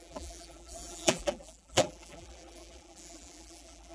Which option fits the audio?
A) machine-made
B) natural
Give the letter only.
A